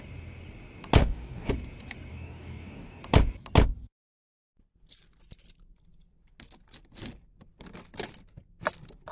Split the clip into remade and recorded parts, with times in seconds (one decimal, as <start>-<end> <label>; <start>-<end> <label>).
0.0-1.0 recorded; 1.0-1.5 remade; 1.5-2.1 recorded; 2.1-3.0 remade; 3.0-9.1 recorded